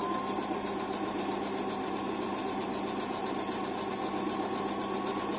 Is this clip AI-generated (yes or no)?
no